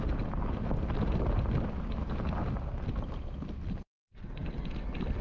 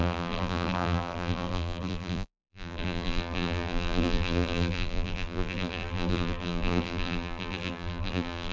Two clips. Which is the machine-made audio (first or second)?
second